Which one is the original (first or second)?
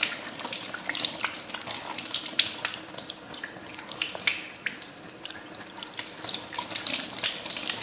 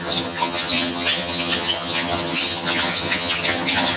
first